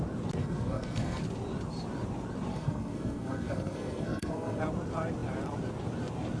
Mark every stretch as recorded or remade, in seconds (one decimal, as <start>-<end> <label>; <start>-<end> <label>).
0.0-0.4 recorded; 0.4-1.2 remade; 1.2-2.5 recorded; 2.5-4.6 remade; 4.6-6.4 recorded